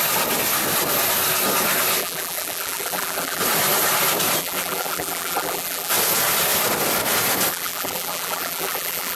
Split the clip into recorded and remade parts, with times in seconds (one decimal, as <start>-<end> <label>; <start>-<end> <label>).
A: 0.0-2.0 recorded; 2.0-3.4 remade; 3.4-4.4 recorded; 4.4-5.9 remade; 5.9-7.5 recorded; 7.5-9.2 remade